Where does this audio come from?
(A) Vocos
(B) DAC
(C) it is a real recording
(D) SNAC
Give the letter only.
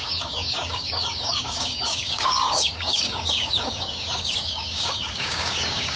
B